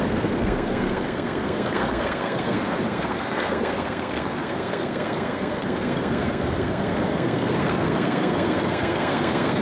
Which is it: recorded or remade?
remade